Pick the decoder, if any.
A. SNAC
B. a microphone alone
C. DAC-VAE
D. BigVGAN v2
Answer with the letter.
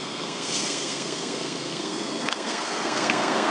A